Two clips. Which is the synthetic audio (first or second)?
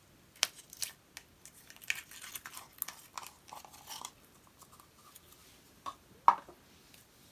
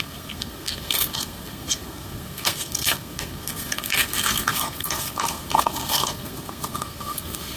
second